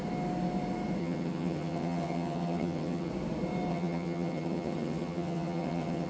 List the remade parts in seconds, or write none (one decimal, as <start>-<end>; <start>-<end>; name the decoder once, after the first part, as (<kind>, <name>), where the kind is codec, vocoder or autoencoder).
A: 1.0-3.1 (vocoder, HiFi-GAN); 3.7-6.1

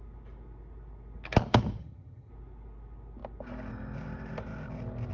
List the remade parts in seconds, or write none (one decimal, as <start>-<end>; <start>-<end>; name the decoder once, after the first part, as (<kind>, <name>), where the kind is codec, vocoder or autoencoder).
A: 1.8-2.3 (vocoder, HiFi-GAN)

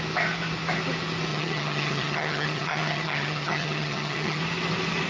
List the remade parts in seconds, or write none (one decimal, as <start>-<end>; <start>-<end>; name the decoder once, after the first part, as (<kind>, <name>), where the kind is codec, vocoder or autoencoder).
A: 1.3-4.4 (vocoder, HiFi-GAN)

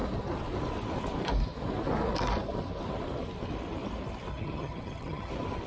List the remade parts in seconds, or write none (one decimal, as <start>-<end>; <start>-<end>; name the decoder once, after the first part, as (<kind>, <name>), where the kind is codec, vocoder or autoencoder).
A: 4.3-5.3 (vocoder, HiFi-GAN)

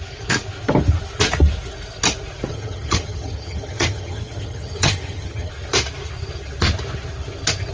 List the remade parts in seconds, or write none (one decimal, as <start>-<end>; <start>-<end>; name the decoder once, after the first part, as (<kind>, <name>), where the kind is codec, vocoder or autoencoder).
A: 2.5-5.5 (vocoder, HiFi-GAN)

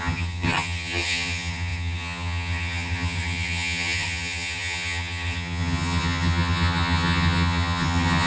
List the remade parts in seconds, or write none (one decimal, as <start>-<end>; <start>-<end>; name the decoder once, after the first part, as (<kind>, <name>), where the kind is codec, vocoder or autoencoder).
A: 0.0-8.3 (vocoder, HiFi-GAN)